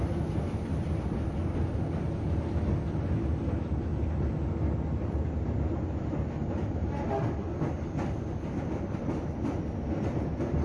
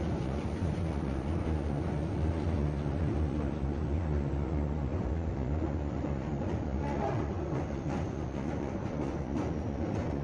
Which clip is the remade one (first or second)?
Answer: second